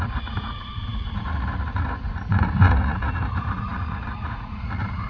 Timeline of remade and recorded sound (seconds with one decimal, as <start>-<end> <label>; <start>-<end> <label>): 0.0-5.1 remade